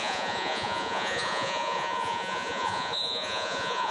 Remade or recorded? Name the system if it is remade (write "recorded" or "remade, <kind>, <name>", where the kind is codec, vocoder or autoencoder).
remade, vocoder, Vocos